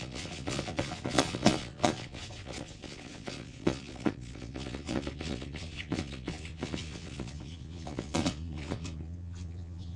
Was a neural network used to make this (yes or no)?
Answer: yes